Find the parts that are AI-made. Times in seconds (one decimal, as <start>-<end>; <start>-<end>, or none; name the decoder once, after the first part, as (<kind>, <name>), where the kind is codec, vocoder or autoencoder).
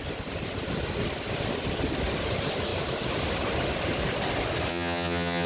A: 4.7-5.5 (vocoder, HiFi-GAN)